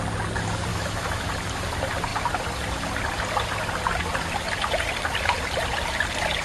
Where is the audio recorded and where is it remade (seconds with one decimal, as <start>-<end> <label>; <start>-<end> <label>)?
0.0-0.7 recorded; 0.7-1.3 remade; 1.3-6.4 recorded